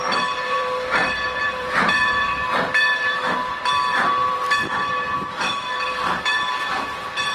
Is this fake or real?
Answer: fake